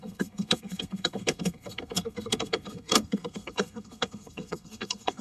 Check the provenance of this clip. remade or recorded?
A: remade